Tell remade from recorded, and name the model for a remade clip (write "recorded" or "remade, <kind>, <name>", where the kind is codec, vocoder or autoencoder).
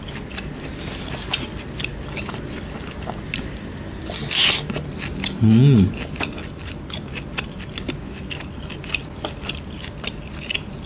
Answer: recorded